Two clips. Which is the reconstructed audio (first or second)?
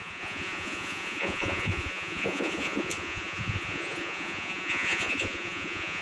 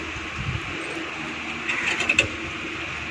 first